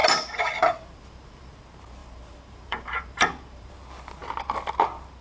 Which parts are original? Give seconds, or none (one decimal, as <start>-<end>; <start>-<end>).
1.5-2.0; 3.7-5.2